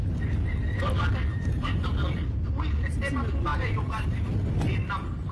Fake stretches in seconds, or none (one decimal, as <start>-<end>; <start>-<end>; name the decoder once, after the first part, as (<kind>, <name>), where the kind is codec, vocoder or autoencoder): 1.3-1.9 (vocoder, BigVGAN v2); 3.5-4.3

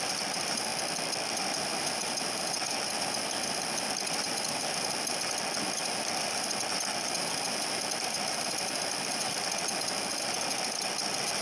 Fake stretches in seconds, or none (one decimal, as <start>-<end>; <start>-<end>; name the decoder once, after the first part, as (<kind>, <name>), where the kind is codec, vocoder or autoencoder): 0.0-0.7 (vocoder, BigVGAN v2); 1.3-11.4